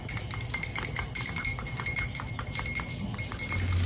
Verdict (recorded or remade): recorded